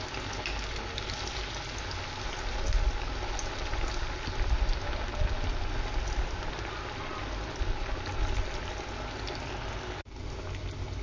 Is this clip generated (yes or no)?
no